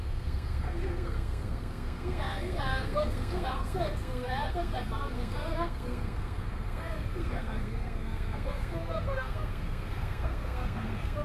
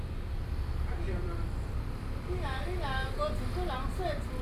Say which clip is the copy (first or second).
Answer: first